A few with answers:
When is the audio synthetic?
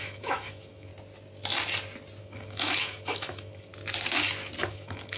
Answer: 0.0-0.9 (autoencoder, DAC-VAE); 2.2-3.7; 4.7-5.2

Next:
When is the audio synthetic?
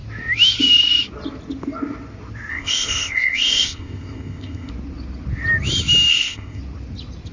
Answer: 2.5-4.7 (codec, ZipCodec); 6.1-6.6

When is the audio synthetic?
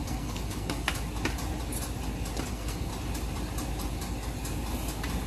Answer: 0.0-0.9 (codec, SNAC); 2.5-2.9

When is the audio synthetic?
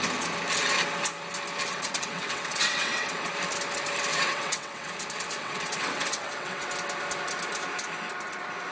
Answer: 1.7-3.3 (vocoder, WaveNeXt); 4.1-4.9; 5.4-6.7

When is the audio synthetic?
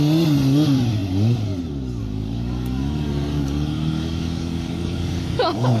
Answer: 2.0-5.8 (codec, DAC)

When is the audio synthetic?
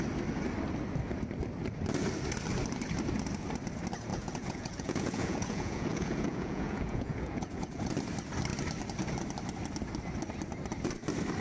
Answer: 4.1-7.9 (vocoder, Vocos)